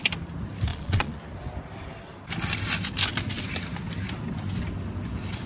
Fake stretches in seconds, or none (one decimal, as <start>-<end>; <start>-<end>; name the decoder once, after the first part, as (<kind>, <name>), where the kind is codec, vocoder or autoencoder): 0.7-1.2 (vocoder, Vocos)